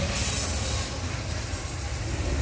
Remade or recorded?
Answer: recorded